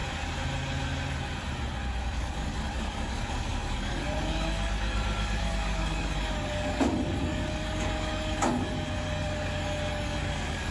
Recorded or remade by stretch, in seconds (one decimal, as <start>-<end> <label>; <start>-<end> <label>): 0.0-2.0 recorded; 2.0-10.7 remade